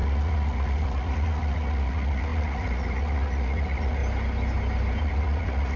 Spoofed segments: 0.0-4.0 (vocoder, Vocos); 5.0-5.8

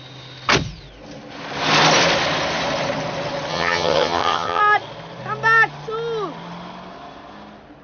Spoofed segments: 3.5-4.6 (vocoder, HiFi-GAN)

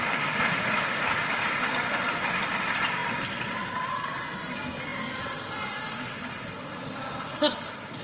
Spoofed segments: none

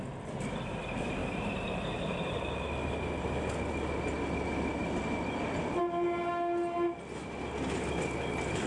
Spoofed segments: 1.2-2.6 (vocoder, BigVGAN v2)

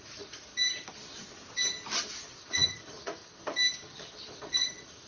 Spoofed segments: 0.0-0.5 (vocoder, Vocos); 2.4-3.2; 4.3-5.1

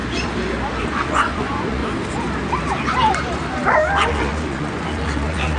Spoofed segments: 0.8-1.8 (vocoder, Vocos); 4.1-5.6

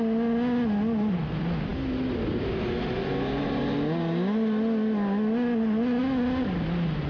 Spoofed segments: none